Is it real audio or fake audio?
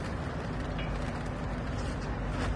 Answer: real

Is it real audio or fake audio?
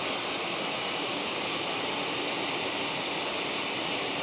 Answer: real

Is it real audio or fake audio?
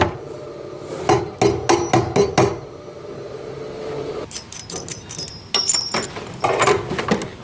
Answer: real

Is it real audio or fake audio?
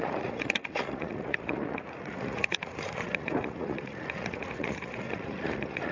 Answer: fake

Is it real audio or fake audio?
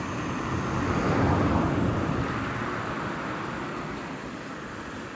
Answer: real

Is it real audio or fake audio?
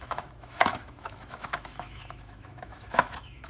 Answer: fake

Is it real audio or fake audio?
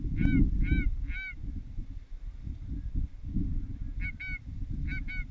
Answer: real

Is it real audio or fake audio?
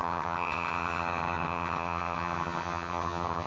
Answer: fake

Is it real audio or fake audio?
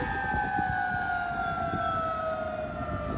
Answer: real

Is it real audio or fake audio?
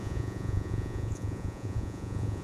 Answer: fake